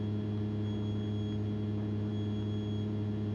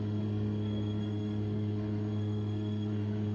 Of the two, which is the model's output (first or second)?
second